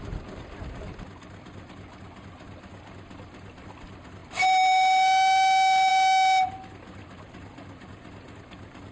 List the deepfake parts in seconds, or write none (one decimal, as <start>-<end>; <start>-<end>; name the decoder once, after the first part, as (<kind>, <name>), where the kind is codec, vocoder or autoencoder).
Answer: none